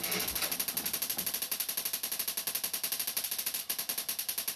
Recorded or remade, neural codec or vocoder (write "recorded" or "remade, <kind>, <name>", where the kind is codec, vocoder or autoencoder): recorded